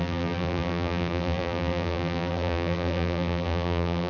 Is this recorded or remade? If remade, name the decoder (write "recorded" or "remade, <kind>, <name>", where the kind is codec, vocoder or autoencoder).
remade, vocoder, BigVGAN v2